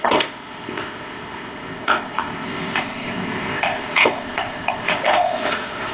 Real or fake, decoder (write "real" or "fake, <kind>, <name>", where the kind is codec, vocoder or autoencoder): fake, codec, ZipCodec